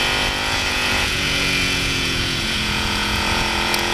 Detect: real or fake fake